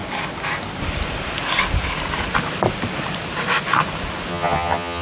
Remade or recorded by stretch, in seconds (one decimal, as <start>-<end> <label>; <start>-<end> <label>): 0.0-4.3 recorded; 4.3-5.0 remade